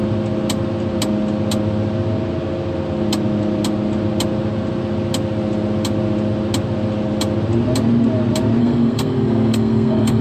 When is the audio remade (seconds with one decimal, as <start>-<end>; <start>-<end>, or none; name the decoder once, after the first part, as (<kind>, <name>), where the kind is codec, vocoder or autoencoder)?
8.6-10.2 (codec, SNAC)